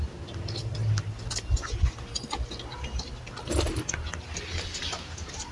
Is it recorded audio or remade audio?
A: recorded